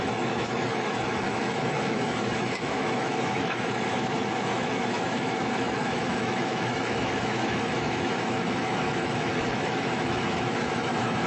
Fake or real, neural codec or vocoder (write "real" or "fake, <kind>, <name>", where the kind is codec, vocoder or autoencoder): fake, autoencoder, DAC-VAE